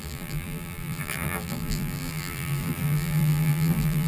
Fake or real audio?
fake